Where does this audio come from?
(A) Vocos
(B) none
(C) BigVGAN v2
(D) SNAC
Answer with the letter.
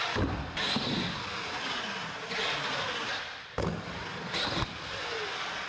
B